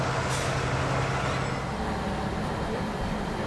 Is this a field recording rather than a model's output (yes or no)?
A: yes